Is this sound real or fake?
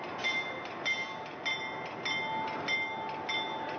real